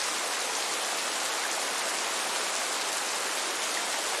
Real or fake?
real